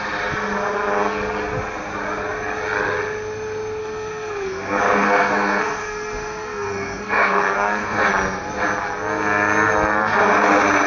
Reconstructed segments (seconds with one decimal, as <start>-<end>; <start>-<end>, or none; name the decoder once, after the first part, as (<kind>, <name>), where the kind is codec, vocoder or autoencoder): 3.8-8.1 (codec, SNAC)